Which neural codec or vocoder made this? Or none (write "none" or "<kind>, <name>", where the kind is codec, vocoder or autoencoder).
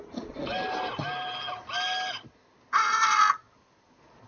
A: none